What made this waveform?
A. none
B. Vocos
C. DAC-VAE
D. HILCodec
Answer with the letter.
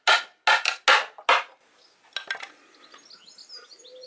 A